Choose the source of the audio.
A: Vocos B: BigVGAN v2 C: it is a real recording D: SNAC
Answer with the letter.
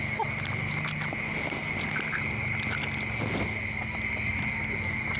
C